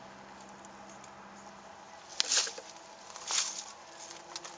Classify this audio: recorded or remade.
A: recorded